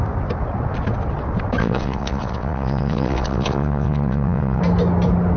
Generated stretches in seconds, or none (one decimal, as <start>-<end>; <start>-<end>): 1.6-4.6